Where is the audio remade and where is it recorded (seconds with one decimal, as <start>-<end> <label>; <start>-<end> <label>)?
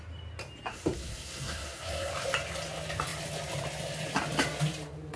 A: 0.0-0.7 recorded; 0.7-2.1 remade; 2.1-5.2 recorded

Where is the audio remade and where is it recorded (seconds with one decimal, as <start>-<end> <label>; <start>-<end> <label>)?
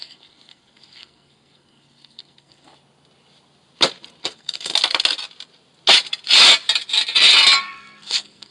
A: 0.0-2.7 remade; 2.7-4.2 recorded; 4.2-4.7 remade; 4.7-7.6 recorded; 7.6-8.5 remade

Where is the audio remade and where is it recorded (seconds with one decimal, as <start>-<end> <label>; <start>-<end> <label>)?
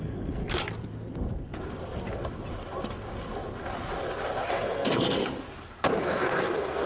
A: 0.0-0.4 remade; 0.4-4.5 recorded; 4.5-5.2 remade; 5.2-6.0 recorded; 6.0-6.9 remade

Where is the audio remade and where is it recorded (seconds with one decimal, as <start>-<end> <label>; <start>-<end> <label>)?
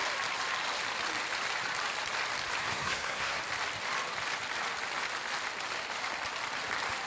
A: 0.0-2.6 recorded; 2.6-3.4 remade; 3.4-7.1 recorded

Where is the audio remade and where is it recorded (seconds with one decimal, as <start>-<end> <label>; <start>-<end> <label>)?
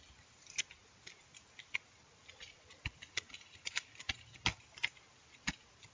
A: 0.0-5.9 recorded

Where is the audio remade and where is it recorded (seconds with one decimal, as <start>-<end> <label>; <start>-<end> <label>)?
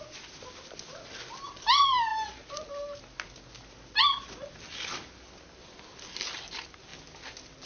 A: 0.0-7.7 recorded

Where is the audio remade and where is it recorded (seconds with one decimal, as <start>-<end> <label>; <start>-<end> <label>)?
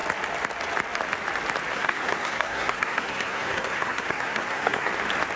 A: 0.0-1.7 recorded; 1.7-4.9 remade; 4.9-5.4 recorded